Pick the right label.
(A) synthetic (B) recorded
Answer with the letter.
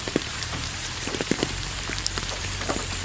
A